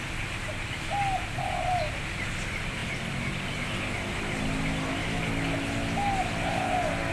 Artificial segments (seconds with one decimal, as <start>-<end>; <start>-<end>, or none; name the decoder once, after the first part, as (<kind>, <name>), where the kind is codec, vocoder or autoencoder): none